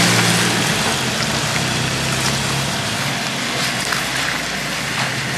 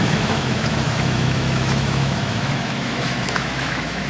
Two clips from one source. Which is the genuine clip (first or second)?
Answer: first